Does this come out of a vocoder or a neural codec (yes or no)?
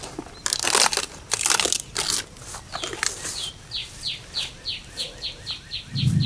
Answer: no